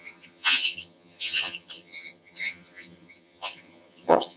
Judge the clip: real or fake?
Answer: fake